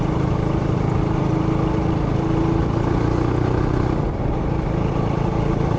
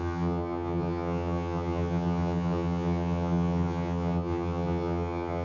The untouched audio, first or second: first